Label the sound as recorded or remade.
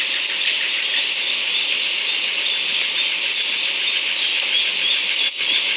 recorded